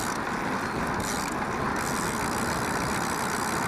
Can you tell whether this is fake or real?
real